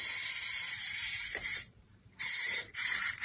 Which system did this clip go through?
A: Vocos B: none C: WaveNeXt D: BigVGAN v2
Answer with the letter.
D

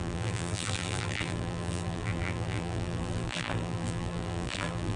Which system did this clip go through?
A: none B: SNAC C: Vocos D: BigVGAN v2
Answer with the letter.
D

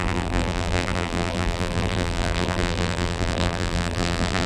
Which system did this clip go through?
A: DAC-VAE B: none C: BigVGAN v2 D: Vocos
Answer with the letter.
C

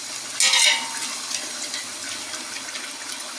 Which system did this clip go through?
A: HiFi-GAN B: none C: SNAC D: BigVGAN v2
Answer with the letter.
B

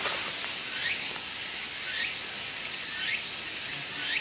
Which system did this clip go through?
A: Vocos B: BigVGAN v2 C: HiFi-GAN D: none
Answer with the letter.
D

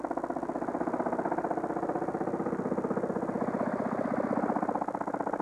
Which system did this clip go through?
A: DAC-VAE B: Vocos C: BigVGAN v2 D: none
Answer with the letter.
D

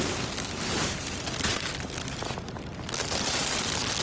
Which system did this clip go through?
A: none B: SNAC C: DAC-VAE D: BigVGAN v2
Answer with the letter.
A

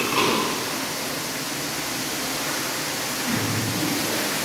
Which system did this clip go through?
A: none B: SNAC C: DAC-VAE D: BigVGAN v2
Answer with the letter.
A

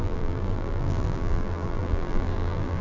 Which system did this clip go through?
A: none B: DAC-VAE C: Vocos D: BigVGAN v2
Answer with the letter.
D